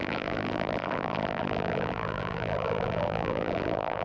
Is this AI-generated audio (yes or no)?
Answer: yes